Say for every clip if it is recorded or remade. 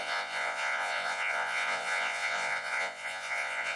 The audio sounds remade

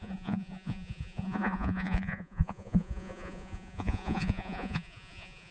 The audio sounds remade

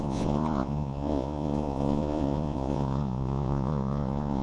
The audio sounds remade